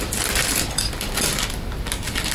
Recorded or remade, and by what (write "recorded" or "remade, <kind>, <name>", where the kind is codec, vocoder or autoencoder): recorded